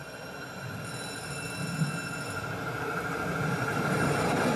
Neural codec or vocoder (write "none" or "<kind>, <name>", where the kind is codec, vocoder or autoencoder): none